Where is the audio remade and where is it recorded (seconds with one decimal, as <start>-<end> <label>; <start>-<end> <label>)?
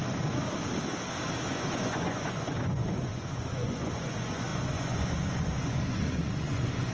0.0-1.5 recorded; 1.5-6.9 remade